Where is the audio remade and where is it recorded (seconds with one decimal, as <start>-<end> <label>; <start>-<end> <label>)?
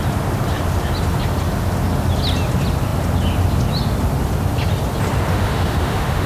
0.0-5.3 recorded; 5.3-6.3 remade